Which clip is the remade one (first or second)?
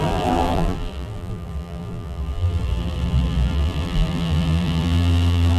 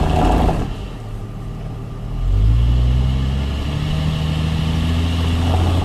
first